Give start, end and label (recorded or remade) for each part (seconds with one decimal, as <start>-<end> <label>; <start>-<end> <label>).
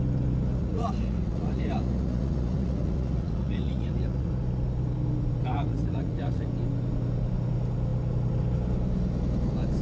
0.0-0.6 recorded; 0.6-4.3 remade; 4.3-5.5 recorded; 5.5-6.5 remade; 6.5-9.8 recorded